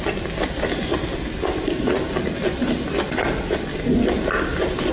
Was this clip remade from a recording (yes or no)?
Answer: no